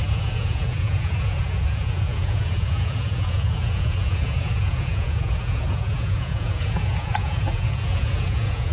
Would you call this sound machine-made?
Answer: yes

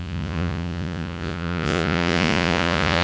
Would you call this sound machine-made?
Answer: yes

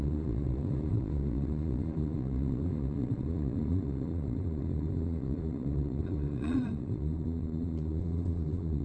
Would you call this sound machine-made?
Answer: yes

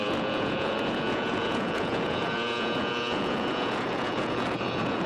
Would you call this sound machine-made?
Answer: yes